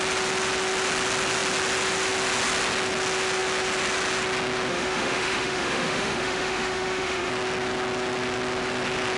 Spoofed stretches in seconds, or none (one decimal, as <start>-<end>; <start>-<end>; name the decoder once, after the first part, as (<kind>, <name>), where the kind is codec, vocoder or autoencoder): 4.7-7.3 (autoencoder, DAC-VAE)